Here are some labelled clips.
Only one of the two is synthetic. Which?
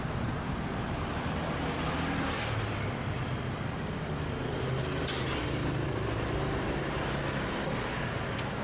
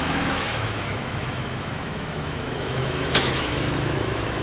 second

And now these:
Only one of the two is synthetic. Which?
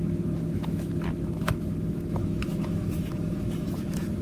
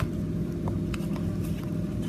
first